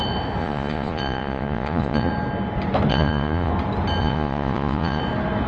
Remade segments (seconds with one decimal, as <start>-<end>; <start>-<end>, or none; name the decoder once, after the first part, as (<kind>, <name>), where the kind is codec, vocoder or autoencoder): 0.4-2.1 (vocoder, Vocos); 2.9-3.5; 4.0-5.0

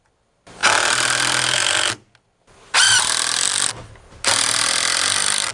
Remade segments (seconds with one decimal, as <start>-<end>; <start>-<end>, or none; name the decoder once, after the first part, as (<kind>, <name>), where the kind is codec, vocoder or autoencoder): none

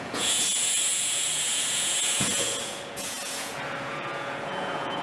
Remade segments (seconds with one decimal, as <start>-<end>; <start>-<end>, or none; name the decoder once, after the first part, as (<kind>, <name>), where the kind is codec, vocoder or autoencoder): 0.0-5.0 (vocoder, Vocos)

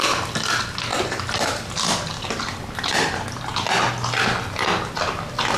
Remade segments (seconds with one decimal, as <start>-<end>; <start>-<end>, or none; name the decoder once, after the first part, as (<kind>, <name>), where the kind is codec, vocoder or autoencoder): none

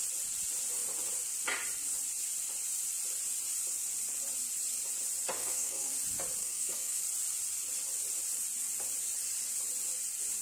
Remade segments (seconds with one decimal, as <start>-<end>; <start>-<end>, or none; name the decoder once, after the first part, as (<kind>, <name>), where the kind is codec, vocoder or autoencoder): 5.4-5.9 (codec, SNAC); 6.4-7.0